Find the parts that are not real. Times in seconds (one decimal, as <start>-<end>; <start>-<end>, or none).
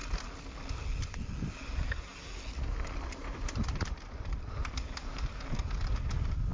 none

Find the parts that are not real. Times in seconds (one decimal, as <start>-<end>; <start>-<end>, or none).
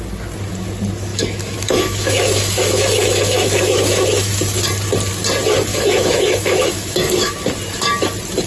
1.1-4.3; 5.7-7.3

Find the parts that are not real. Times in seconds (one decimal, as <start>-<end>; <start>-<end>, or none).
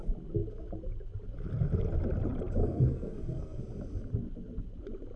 2.6-3.6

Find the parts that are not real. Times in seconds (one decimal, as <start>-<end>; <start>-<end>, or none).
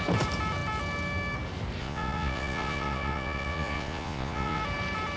1.8-4.6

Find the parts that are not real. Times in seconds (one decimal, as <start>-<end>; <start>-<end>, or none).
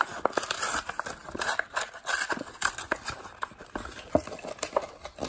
none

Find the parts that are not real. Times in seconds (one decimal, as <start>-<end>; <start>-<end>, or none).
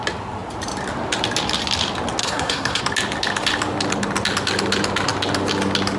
2.2-2.8